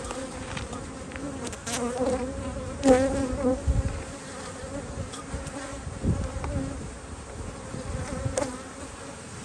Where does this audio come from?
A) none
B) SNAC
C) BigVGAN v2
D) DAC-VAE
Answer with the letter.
A